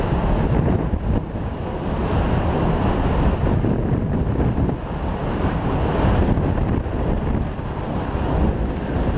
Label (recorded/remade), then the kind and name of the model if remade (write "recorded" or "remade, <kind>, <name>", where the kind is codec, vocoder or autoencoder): recorded